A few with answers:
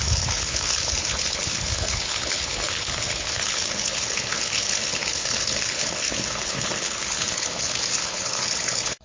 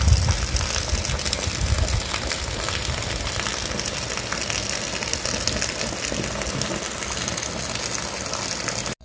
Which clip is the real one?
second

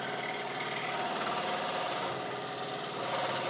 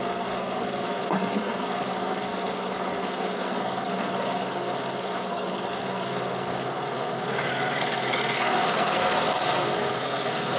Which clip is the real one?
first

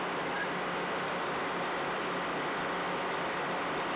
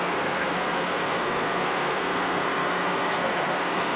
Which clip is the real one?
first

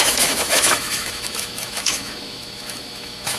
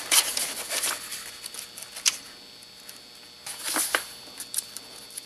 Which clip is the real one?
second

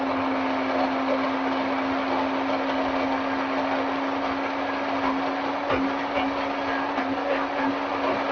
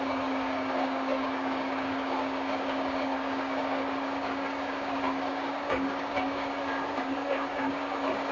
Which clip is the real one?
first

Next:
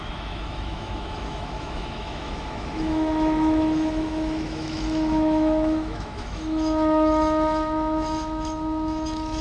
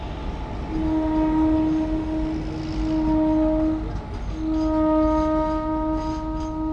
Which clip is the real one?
second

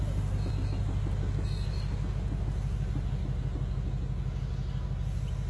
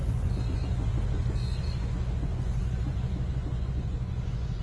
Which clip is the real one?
first